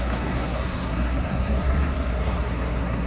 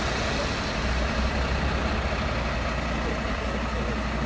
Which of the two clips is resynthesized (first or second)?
first